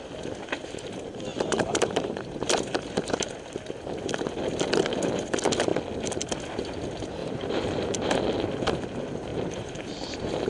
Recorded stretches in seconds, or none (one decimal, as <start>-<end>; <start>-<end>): 0.0-1.3; 3.3-7.2; 8.2-9.3